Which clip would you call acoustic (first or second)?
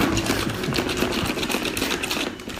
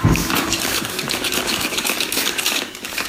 first